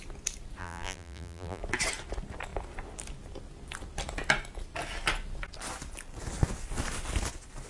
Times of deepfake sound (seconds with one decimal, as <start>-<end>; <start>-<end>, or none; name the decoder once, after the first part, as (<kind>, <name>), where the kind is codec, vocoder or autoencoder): 0.6-1.6 (vocoder, BigVGAN v2)

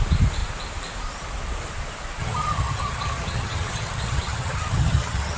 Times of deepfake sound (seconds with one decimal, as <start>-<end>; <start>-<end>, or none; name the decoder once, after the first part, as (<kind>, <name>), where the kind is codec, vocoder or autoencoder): 2.2-5.4 (vocoder, HiFi-GAN)